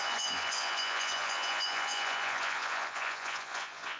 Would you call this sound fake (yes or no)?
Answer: yes